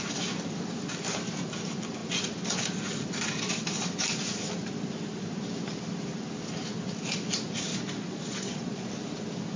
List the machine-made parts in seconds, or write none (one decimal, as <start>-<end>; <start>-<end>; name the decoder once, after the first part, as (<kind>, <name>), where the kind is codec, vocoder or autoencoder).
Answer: 7.7-8.9 (vocoder, Vocos)